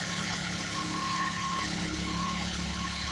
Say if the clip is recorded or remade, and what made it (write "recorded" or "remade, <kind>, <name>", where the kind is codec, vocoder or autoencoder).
remade, codec, HILCodec